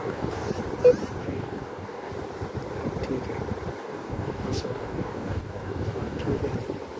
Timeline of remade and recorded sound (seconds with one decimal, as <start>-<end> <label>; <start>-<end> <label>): 0.0-0.5 remade; 0.5-1.2 recorded; 1.2-2.1 remade; 2.1-3.8 recorded; 3.8-6.4 remade; 6.4-7.0 recorded